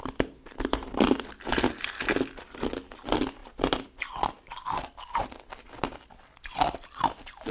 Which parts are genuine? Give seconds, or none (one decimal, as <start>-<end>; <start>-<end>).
0.0-7.5